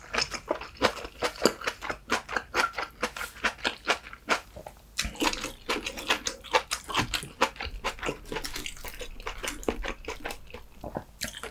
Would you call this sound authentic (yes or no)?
yes